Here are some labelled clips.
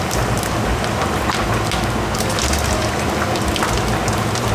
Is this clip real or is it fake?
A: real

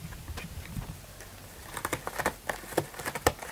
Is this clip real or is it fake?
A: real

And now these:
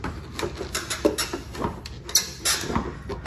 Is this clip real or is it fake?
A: real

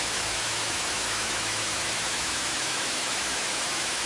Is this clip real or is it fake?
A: fake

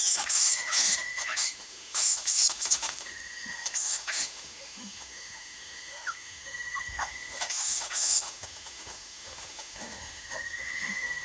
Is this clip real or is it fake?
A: fake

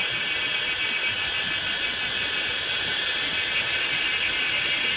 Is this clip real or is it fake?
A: real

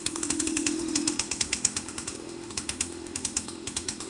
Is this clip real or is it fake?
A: fake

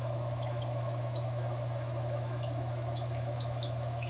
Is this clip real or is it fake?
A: fake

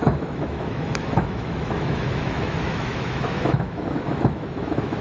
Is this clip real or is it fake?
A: fake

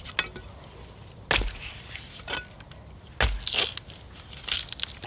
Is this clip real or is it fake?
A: real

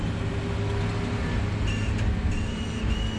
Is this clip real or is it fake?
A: real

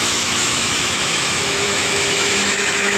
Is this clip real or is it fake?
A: fake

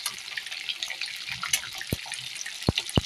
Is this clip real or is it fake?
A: real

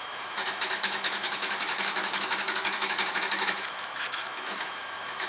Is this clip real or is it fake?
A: fake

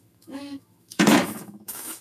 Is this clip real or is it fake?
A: fake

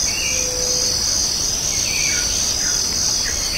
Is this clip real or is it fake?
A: real